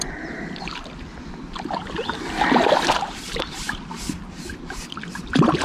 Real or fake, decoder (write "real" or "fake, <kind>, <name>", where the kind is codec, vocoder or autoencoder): real